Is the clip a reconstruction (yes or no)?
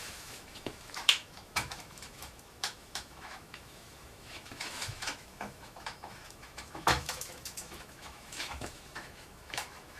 yes